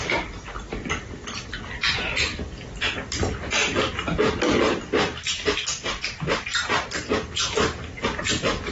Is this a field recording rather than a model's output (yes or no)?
yes